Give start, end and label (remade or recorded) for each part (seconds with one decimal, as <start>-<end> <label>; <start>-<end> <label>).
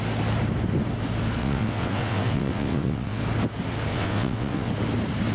0.0-1.4 recorded; 1.4-3.2 remade; 3.2-3.9 recorded; 3.9-4.7 remade; 4.7-5.3 recorded